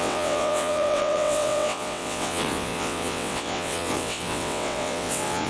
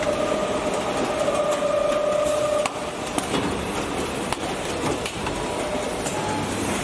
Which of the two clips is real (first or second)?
second